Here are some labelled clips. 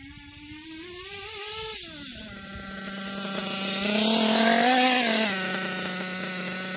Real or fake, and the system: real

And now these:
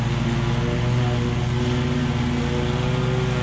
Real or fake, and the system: real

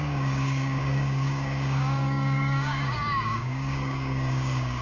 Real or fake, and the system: fake, codec, DAC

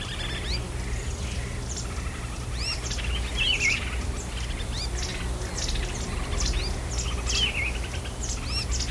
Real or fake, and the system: real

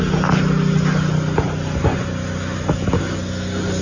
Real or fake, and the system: real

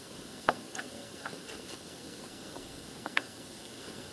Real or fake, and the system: fake, codec, SNAC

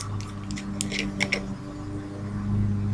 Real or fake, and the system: real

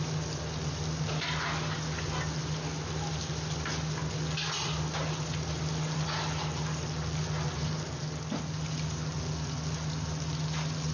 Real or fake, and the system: real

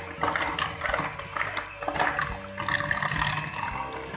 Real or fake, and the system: real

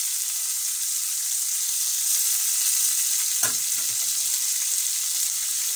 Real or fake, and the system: real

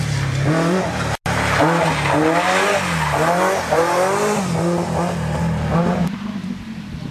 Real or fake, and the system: real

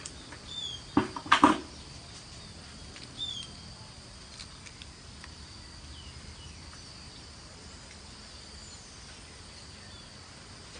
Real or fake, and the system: real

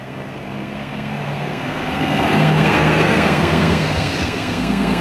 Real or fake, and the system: fake, codec, SNAC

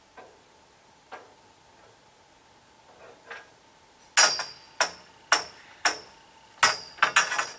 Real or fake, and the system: real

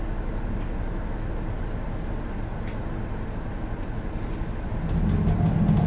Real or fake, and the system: real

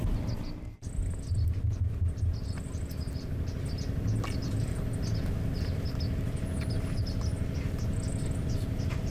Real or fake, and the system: real